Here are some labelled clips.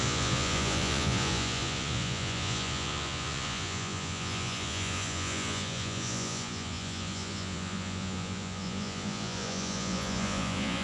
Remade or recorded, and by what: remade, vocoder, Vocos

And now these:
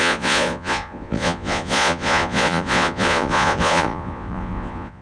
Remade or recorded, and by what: remade, vocoder, Vocos